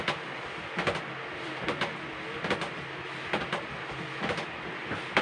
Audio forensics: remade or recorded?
recorded